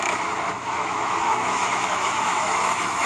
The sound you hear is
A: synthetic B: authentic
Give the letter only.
A